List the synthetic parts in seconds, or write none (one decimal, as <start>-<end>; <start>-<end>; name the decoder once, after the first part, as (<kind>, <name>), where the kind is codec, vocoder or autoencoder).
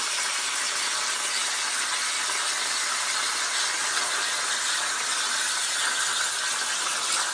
none